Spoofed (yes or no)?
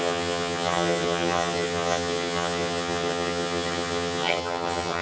yes